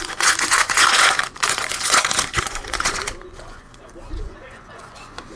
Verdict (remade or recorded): remade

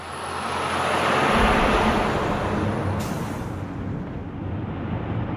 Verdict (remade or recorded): recorded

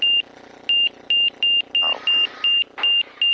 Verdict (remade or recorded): recorded